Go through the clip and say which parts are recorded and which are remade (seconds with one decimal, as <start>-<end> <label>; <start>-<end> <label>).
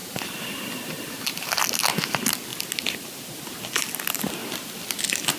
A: 0.0-1.6 remade; 1.6-5.4 recorded